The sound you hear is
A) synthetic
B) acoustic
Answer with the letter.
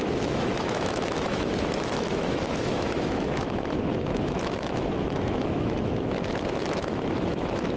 A